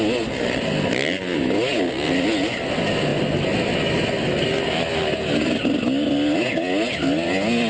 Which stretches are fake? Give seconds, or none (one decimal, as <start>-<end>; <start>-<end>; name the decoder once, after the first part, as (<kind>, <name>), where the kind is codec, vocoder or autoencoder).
none